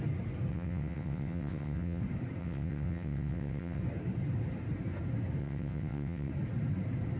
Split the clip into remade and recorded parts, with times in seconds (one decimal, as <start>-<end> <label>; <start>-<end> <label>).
0.0-0.5 recorded; 0.5-2.0 remade; 2.0-2.4 recorded; 2.4-3.8 remade; 3.8-5.4 recorded; 5.4-6.3 remade; 6.3-7.2 recorded